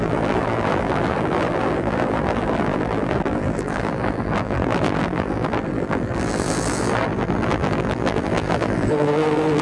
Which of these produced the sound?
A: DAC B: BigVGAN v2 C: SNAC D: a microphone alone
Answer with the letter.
B